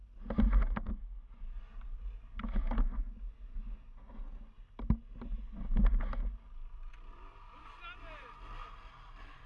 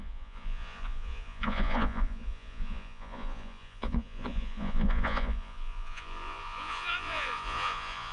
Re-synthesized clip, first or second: second